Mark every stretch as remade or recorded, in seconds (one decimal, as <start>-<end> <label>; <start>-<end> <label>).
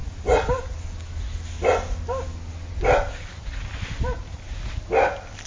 0.0-5.5 recorded